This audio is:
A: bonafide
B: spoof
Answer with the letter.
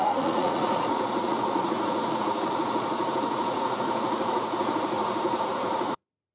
B